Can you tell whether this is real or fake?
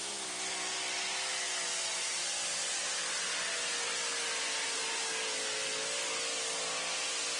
real